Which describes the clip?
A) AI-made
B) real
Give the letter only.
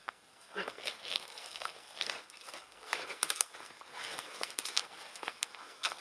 A